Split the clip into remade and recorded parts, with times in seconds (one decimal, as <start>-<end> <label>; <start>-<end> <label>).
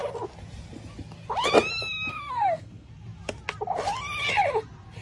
0.0-2.1 recorded; 2.1-2.9 remade; 2.9-5.0 recorded